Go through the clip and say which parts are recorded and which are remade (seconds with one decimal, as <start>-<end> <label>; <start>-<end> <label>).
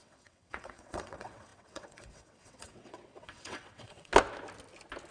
0.0-4.1 remade; 4.1-5.1 recorded